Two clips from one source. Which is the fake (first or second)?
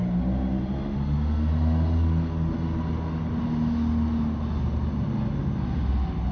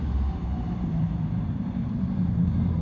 second